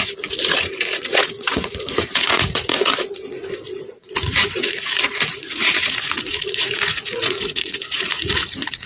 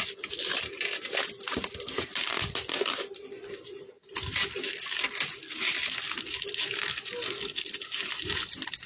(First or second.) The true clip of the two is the second